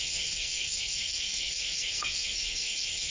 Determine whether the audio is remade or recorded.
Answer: remade